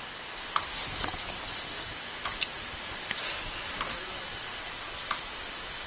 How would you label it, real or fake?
real